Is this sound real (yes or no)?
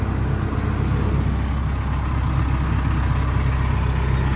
yes